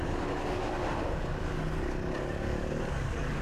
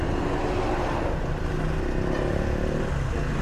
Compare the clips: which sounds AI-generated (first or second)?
first